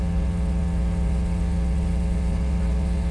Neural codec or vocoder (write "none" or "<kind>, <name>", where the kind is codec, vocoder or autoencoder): vocoder, WaveNeXt